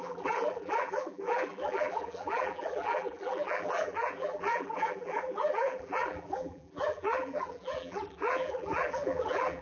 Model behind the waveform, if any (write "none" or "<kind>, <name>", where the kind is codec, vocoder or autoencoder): vocoder, BigVGAN v2